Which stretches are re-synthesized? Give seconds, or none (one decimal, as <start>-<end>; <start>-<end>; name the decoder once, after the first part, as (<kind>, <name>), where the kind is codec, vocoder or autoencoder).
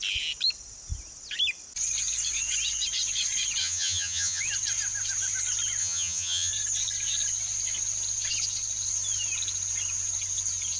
3.6-4.4 (vocoder, HiFi-GAN); 5.8-6.5